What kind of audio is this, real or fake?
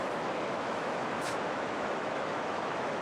fake